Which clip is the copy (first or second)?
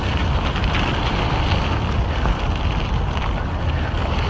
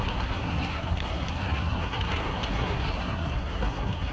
second